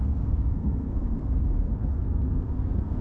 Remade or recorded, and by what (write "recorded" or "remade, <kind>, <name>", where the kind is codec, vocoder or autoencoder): remade, codec, SNAC